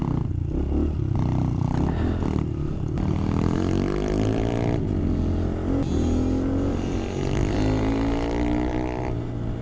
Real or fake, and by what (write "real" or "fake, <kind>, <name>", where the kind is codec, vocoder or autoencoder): real